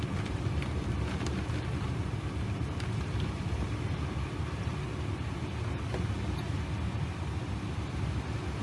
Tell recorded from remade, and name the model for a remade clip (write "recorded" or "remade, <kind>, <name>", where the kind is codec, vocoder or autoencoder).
recorded